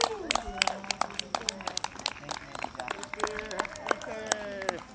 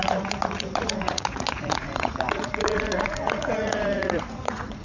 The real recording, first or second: first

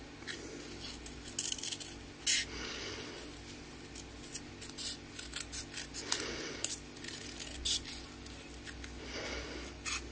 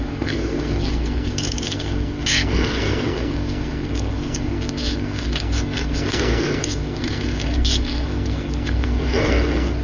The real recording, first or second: first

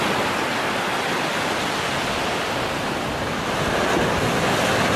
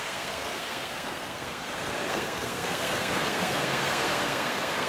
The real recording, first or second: first